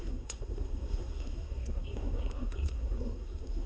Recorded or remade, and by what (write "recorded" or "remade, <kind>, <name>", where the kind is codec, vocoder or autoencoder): remade, codec, SNAC